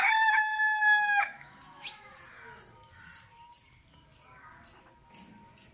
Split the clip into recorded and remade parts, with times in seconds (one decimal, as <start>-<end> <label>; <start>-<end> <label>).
0.0-2.2 remade; 2.2-5.7 recorded